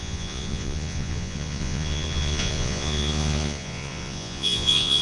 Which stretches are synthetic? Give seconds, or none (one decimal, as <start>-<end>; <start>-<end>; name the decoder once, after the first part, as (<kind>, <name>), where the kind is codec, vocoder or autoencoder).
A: 0.0-5.0 (vocoder, Vocos)